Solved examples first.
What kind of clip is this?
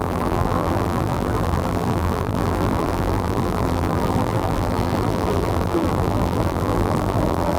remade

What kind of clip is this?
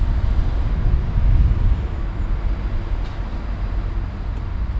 recorded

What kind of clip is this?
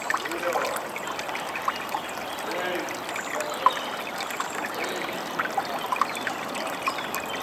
recorded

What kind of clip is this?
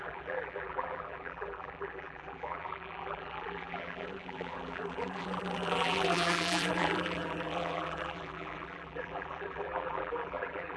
remade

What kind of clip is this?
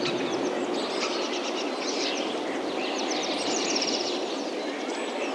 remade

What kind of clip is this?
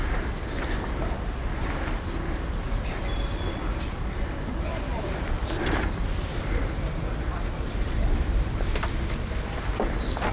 remade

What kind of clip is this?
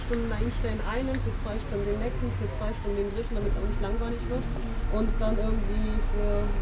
recorded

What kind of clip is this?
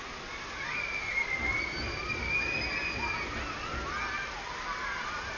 recorded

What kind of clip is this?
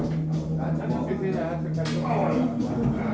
recorded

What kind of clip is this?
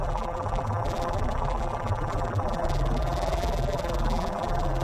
remade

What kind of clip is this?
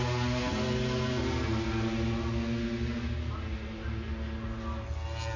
recorded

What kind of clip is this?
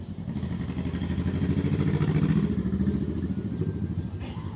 recorded